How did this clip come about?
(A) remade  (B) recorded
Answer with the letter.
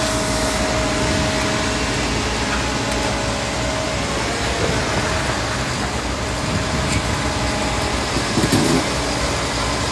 B